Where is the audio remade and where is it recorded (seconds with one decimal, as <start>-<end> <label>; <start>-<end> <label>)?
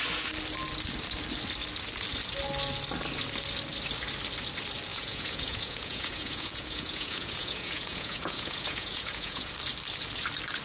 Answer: 0.0-4.9 recorded; 4.9-9.5 remade; 9.5-10.6 recorded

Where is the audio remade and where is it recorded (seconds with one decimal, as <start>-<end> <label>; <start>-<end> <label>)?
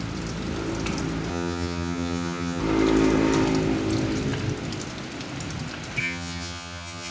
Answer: 0.0-1.3 recorded; 1.3-2.6 remade; 2.6-6.0 recorded; 6.0-7.1 remade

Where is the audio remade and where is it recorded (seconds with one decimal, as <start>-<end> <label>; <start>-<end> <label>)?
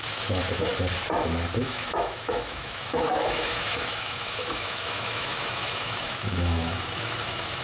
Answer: 0.0-0.7 remade; 0.7-1.6 recorded; 1.6-7.6 remade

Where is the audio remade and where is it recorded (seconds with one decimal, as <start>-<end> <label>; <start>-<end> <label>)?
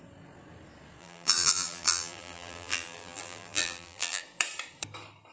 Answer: 0.0-1.0 recorded; 1.0-4.2 remade; 4.2-5.3 recorded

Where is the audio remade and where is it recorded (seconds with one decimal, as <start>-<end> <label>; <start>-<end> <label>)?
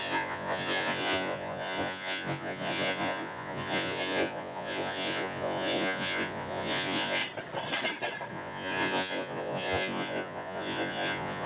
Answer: 0.0-7.2 remade; 7.2-8.3 recorded; 8.3-11.5 remade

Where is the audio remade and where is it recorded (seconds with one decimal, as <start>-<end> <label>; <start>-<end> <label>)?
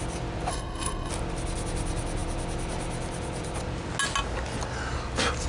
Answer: 0.0-0.5 recorded; 0.5-1.1 remade; 1.1-5.5 recorded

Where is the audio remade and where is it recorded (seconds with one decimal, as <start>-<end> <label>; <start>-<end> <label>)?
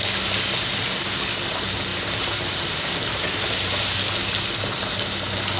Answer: 0.0-1.9 recorded; 1.9-4.0 remade; 4.0-5.6 recorded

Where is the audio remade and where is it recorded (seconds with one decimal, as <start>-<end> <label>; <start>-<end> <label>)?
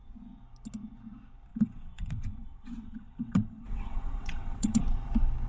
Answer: 0.0-1.5 recorded; 1.5-4.8 remade; 4.8-5.5 recorded